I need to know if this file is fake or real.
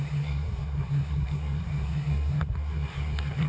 fake